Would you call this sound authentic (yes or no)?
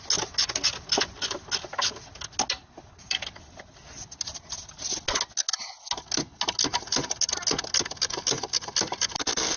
yes